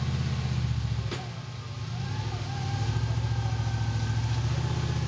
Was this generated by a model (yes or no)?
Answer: no